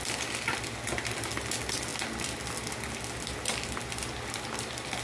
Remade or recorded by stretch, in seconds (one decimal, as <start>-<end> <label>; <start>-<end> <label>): 0.0-5.0 recorded